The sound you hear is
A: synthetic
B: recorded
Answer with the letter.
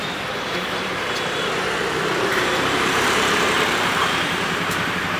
A